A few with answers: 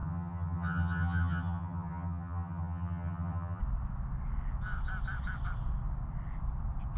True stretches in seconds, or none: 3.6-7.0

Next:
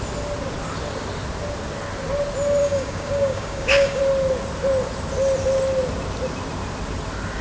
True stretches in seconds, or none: 0.0-2.6; 4.0-7.4

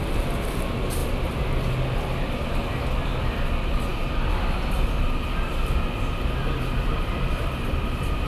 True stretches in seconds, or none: 0.0-8.3